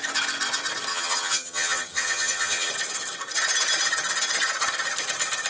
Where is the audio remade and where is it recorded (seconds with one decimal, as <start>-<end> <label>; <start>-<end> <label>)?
0.0-0.9 recorded; 0.9-2.7 remade; 2.7-5.5 recorded